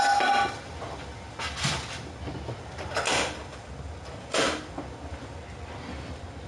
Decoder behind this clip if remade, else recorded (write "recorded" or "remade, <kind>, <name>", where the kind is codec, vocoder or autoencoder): recorded